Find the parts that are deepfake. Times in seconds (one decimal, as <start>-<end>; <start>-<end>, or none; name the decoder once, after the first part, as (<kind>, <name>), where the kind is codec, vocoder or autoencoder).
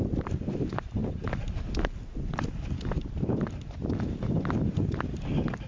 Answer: none